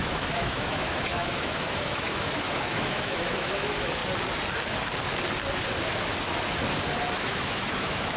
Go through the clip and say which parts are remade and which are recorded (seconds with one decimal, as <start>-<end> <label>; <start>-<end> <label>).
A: 0.0-4.0 remade; 4.0-7.2 recorded; 7.2-8.2 remade

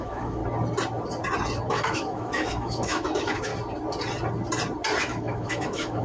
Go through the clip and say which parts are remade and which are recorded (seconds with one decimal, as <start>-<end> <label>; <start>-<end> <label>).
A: 0.0-0.4 remade; 0.4-1.7 recorded; 1.7-3.5 remade; 3.5-5.0 recorded; 5.0-6.0 remade

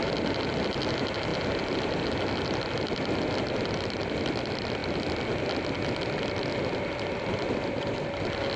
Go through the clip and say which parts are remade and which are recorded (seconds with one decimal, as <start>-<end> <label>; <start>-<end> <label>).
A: 0.0-8.6 recorded

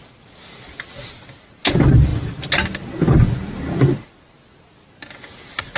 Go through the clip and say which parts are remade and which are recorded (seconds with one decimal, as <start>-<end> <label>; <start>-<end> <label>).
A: 0.0-5.8 recorded